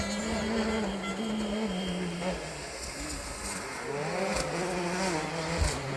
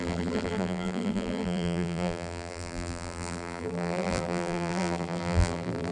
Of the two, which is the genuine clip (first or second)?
first